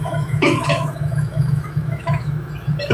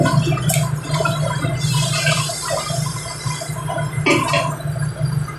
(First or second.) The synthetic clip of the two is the first